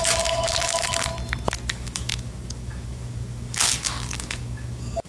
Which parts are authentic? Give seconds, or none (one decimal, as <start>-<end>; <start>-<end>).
1.1-1.7